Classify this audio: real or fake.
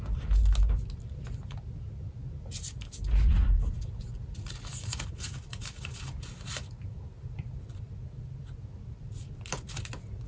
real